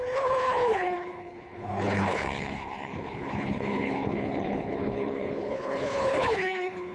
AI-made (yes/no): yes